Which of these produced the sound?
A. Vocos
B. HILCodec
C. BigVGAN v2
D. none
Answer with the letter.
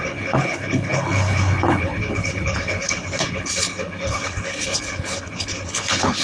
B